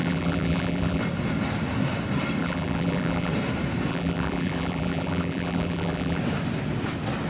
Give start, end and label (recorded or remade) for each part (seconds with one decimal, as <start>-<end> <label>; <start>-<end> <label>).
0.0-1.0 remade; 1.0-2.4 recorded; 2.4-3.3 remade; 3.3-3.9 recorded; 3.9-6.2 remade; 6.2-7.3 recorded